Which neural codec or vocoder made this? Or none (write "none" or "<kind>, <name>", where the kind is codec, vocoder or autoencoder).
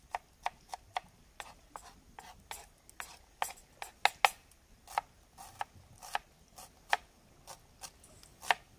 none